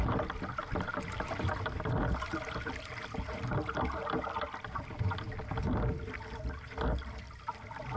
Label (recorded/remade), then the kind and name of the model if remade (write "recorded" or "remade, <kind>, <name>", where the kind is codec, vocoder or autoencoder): recorded